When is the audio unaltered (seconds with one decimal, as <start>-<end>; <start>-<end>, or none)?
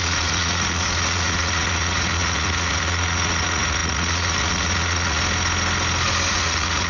5.2-6.3